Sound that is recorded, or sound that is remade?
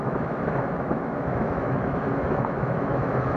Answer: remade